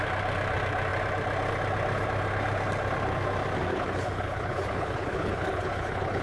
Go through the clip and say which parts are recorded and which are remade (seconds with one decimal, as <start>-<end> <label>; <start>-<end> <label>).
0.0-3.7 recorded; 3.7-6.2 remade